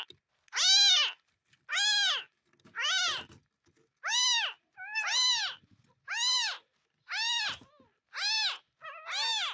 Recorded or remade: recorded